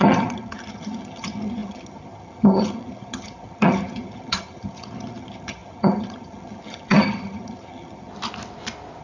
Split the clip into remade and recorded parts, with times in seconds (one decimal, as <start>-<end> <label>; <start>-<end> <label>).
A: 0.0-8.1 remade; 8.1-9.0 recorded